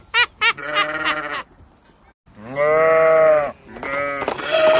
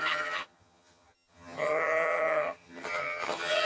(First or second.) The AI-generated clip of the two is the second